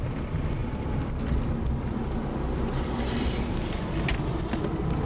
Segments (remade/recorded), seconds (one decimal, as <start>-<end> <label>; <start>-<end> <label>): 0.0-0.6 recorded; 0.6-3.6 remade; 3.6-5.0 recorded